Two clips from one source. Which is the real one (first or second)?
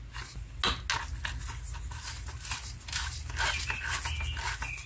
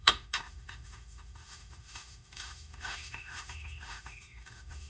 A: first